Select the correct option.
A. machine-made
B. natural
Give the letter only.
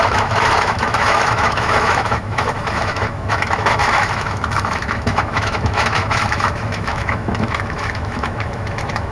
A